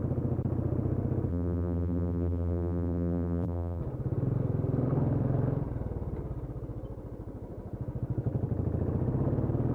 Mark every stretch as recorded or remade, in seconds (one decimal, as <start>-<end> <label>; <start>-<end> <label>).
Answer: 0.0-1.3 recorded; 1.3-3.8 remade; 3.8-9.7 recorded